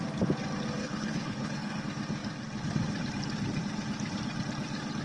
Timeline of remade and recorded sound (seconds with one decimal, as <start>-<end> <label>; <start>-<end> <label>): 0.0-0.8 recorded; 0.8-1.8 remade; 1.8-5.0 recorded

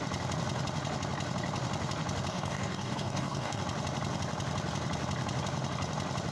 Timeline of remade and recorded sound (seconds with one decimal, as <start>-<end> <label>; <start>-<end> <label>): 0.0-2.3 recorded; 2.3-3.6 remade; 3.6-6.3 recorded

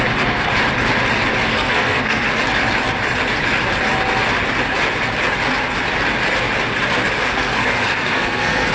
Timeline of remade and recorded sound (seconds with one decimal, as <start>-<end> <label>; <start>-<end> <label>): 0.0-1.5 recorded; 1.5-2.3 remade; 2.3-7.2 recorded; 7.2-8.7 remade

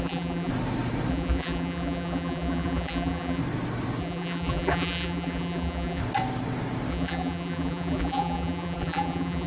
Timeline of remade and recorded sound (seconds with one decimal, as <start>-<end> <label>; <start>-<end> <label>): 0.0-0.5 remade; 0.5-1.1 recorded; 1.1-3.4 remade; 3.4-4.0 recorded; 4.0-6.0 remade; 6.0-6.9 recorded; 6.9-9.5 remade

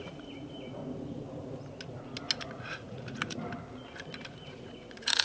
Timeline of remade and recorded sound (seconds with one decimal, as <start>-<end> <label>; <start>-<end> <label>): 0.0-0.8 remade; 0.8-2.4 recorded; 2.4-3.4 remade; 3.4-4.3 recorded; 4.3-5.2 remade

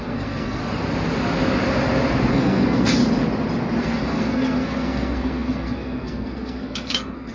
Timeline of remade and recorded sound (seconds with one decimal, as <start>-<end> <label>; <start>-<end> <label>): 0.0-0.6 remade; 0.6-2.3 recorded; 2.3-3.0 remade; 3.0-3.8 recorded; 3.8-7.3 remade

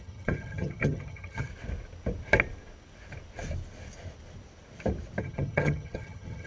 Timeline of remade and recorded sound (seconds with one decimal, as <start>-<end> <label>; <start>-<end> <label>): 0.0-1.5 remade; 1.5-5.2 recorded; 5.2-6.5 remade